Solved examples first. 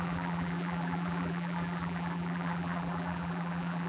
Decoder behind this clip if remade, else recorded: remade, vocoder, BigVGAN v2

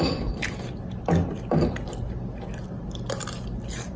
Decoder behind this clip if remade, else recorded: recorded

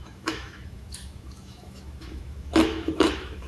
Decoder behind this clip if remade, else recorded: remade, autoencoder, DAC-VAE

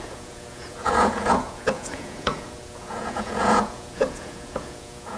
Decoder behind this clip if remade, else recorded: remade, vocoder, Vocos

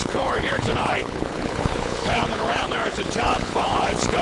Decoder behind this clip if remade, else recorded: remade, codec, HILCodec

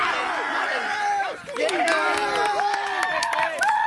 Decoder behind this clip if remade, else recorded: recorded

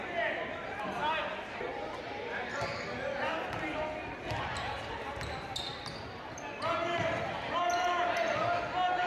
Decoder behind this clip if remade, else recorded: recorded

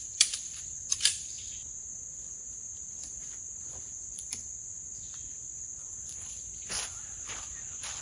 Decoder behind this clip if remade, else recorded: remade, vocoder, BigVGAN v2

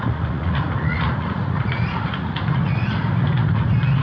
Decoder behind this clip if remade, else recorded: remade, vocoder, Vocos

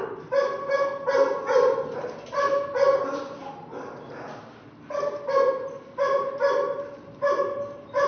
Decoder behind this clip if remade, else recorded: recorded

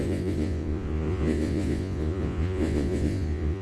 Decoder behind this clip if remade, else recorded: remade, vocoder, Vocos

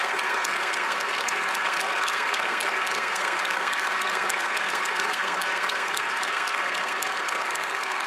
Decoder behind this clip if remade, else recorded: remade, codec, SNAC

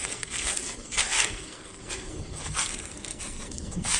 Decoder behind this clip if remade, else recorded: remade, codec, SNAC